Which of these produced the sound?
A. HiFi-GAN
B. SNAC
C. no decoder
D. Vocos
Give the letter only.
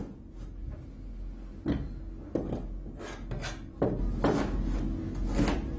C